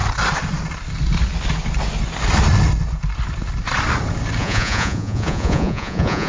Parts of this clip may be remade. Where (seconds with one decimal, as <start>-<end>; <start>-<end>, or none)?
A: 4.4-6.3